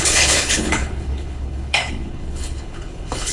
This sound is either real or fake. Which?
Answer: fake